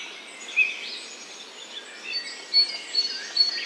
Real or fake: real